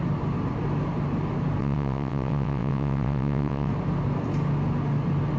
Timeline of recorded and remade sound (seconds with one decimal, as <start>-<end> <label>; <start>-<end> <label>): 0.0-1.6 recorded; 1.6-3.7 remade; 3.7-5.4 recorded